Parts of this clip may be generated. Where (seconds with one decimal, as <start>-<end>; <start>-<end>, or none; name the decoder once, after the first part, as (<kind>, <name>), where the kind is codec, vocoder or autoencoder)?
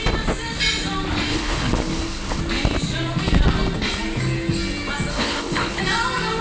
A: 1.3-2.4 (codec, HILCodec); 5.1-5.8